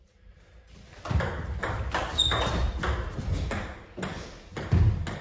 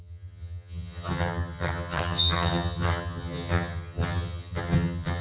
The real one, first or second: first